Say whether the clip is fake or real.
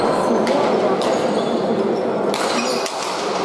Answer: real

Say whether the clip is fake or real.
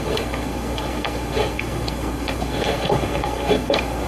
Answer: fake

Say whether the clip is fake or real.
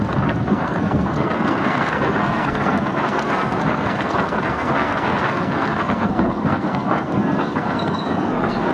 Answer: fake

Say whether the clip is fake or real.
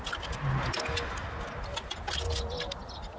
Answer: real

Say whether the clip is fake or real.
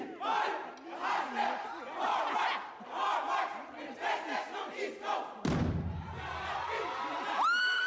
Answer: real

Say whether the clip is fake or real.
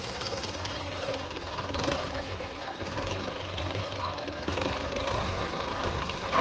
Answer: fake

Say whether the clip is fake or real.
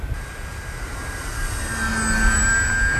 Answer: real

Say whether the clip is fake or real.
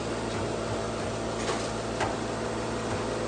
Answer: real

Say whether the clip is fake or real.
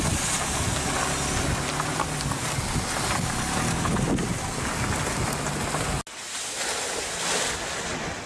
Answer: real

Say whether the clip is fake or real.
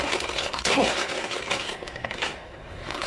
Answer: fake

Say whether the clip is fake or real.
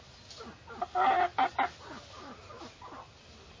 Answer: real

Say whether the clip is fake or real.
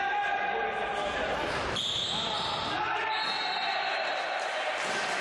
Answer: real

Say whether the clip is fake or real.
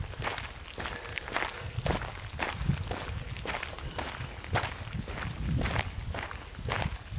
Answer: real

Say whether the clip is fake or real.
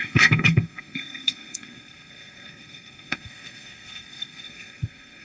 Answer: fake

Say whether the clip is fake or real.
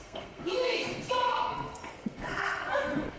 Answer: fake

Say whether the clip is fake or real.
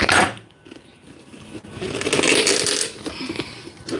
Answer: real